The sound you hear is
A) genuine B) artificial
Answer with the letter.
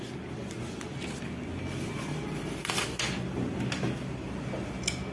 A